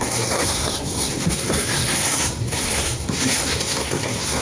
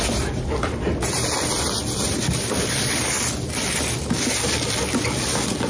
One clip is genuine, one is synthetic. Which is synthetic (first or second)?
first